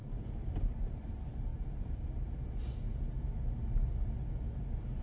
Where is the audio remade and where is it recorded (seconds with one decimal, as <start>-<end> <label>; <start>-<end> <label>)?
0.0-1.0 remade; 1.0-1.5 recorded; 1.5-2.3 remade; 2.3-5.0 recorded